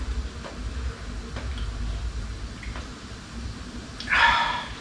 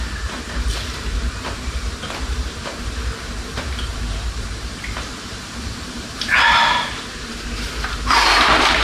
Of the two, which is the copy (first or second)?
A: second